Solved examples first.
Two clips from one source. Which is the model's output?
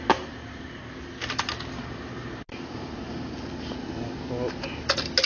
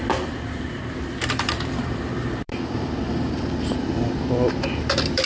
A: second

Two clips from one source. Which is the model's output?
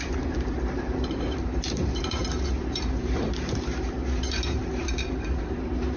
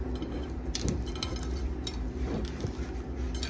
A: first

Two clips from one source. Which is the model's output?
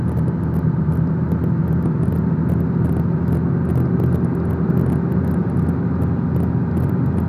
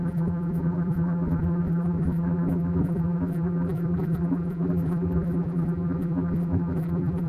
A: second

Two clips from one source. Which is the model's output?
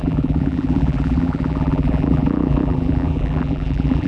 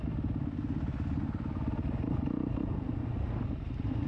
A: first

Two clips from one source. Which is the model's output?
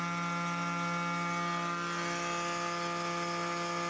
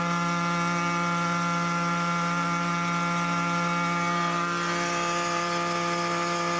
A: second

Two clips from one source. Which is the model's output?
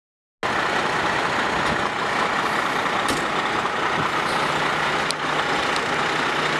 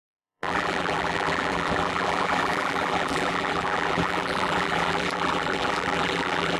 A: second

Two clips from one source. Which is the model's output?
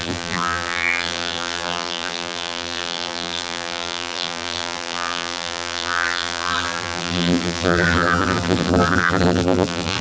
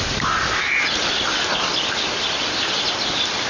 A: first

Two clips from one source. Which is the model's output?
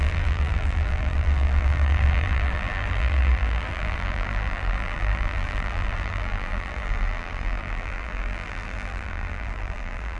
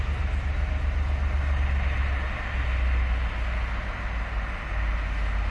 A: first